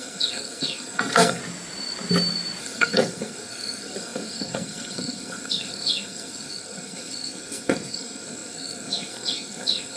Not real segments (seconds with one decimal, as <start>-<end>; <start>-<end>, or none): 0.0-1.4; 2.6-10.0